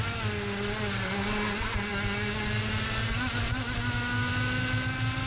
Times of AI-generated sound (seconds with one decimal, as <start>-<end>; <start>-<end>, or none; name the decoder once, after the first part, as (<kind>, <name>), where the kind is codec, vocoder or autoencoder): none